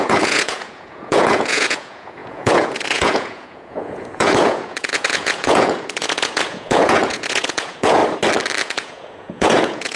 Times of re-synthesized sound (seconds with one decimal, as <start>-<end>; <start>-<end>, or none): 0.0-8.0; 8.6-10.0